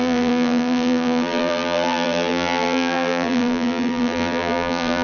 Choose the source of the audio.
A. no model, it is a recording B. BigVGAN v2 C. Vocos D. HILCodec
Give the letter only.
B